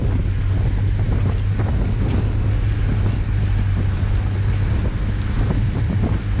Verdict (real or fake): real